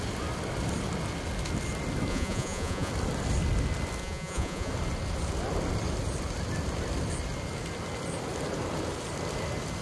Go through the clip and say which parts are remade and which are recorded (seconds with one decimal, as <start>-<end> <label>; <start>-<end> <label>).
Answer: 0.0-2.1 recorded; 2.1-2.9 remade; 2.9-4.0 recorded; 4.0-4.7 remade; 4.7-9.8 recorded

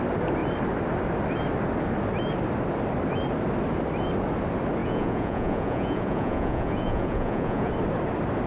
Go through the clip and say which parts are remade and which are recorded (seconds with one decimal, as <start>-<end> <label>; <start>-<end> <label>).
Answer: 0.0-4.8 recorded; 4.8-7.7 remade; 7.7-8.5 recorded

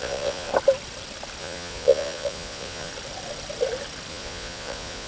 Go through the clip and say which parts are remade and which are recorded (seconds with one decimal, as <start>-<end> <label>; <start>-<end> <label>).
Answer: 0.0-0.5 remade; 0.5-1.4 recorded; 1.4-2.9 remade; 2.9-4.1 recorded; 4.1-5.1 remade